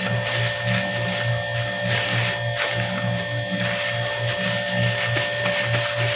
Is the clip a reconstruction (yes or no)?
no